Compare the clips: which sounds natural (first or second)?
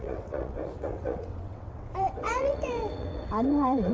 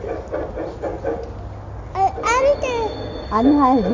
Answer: second